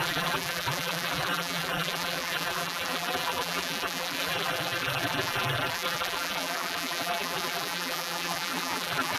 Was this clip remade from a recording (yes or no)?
yes